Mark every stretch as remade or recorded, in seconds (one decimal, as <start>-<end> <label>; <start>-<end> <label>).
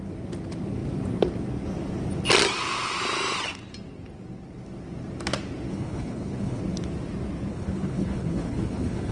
0.0-5.7 recorded; 5.7-6.6 remade; 6.6-7.5 recorded; 7.5-9.1 remade